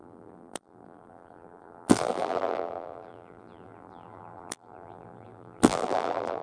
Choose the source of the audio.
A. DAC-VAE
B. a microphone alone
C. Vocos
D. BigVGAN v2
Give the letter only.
D